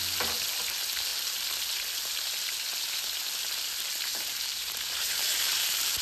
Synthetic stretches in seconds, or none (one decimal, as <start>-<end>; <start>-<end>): 4.1-6.0